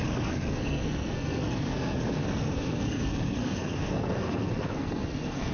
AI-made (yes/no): yes